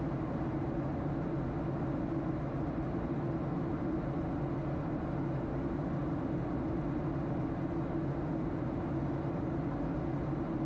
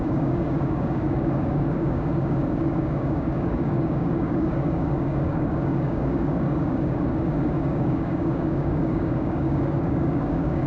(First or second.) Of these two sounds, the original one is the first